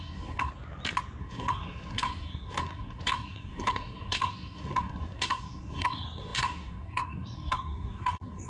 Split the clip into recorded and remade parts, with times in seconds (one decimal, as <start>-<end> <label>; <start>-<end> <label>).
0.0-0.5 remade; 0.5-1.2 recorded; 1.2-8.5 remade